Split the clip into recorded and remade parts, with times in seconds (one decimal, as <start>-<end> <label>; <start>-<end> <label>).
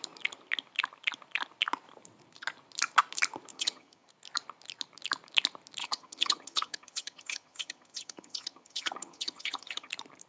0.0-3.5 recorded; 3.5-4.1 remade; 4.1-5.8 recorded; 5.8-9.9 remade; 9.9-10.3 recorded